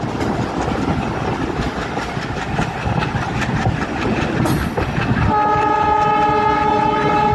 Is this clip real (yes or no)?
yes